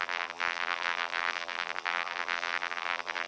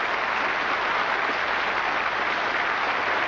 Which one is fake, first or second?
first